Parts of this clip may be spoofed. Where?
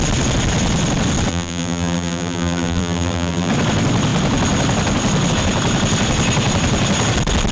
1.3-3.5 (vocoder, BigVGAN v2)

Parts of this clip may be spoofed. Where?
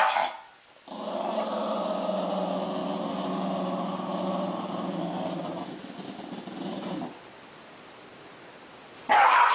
none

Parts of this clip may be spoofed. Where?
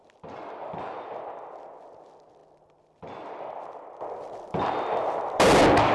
none